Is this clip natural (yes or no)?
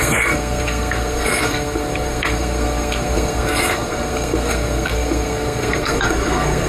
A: no